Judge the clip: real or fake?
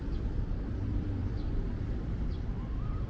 fake